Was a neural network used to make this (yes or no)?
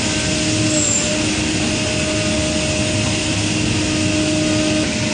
no